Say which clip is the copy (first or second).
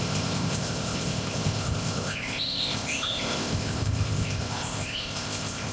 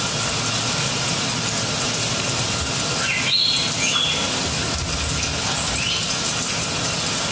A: first